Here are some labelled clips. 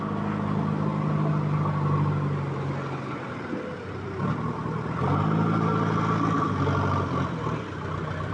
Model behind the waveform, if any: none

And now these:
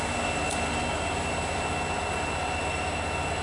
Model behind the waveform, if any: none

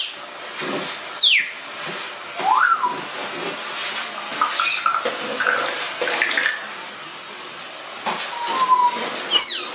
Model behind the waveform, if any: none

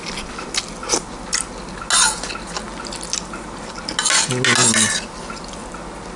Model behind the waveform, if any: none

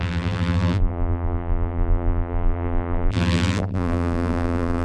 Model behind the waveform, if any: vocoder, BigVGAN v2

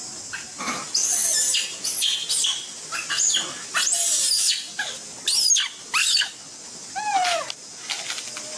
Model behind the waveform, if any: none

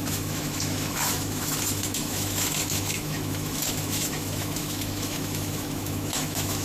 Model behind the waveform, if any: autoencoder, DAC-VAE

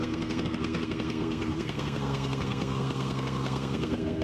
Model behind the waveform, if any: codec, SNAC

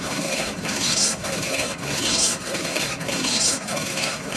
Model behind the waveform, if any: codec, SNAC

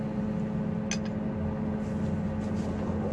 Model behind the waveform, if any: none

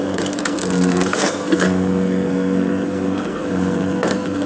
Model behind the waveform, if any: codec, SNAC